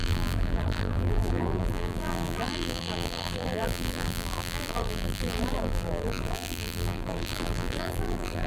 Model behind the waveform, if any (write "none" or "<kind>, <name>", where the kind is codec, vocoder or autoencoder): vocoder, BigVGAN v2